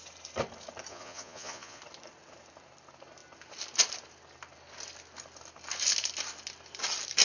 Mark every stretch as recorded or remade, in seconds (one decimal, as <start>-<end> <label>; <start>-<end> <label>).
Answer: 0.0-0.9 recorded; 0.9-1.8 remade; 1.8-7.2 recorded